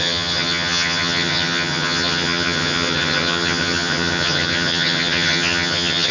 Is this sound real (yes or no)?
no